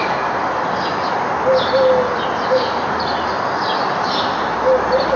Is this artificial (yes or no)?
no